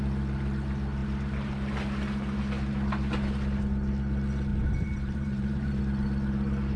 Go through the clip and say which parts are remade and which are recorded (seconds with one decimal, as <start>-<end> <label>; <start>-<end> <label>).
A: 0.0-4.5 recorded; 4.5-5.8 remade; 5.8-6.8 recorded